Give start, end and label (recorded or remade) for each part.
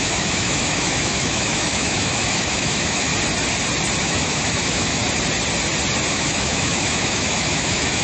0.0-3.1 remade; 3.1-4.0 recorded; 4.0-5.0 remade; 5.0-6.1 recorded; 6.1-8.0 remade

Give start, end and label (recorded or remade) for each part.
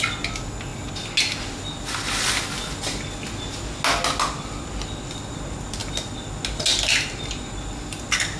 0.0-8.4 recorded